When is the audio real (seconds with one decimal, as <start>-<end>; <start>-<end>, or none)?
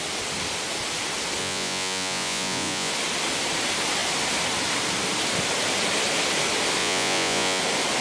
0.0-1.4; 2.9-6.8; 7.6-8.0